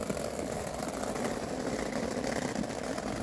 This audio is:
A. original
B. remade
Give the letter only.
A